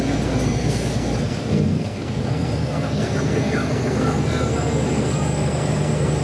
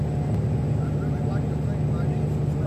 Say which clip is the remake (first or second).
first